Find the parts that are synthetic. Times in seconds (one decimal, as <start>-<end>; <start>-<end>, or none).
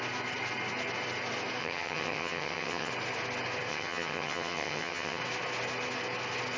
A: 1.6-2.9; 3.7-5.2